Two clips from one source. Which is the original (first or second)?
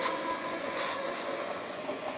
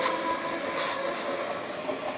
second